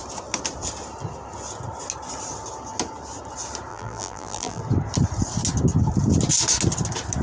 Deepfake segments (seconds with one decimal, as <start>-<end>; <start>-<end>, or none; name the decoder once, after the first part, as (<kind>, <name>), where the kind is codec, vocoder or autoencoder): 3.7-4.6 (vocoder, BigVGAN v2)